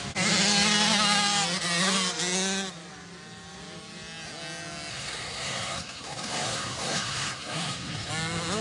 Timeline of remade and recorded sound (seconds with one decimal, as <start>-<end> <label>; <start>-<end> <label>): 0.0-4.9 recorded; 4.9-8.1 remade; 8.1-8.6 recorded